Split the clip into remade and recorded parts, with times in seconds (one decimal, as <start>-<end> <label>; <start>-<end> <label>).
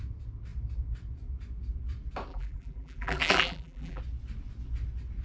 0.0-2.3 recorded; 2.3-4.0 remade; 4.0-5.2 recorded